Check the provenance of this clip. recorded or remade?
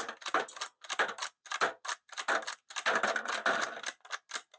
recorded